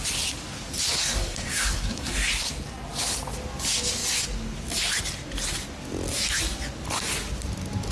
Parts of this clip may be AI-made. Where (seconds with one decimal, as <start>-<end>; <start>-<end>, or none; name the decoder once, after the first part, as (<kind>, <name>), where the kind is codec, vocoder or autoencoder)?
1.0-2.3 (codec, SNAC)